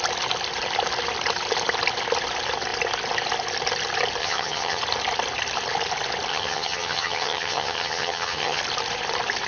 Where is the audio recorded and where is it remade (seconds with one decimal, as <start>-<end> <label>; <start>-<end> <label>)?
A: 0.0-4.2 recorded; 4.2-4.8 remade; 4.8-6.3 recorded; 6.3-8.6 remade; 8.6-9.5 recorded